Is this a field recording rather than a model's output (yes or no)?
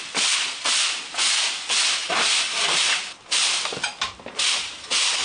no